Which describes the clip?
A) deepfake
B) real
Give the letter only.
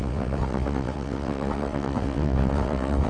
A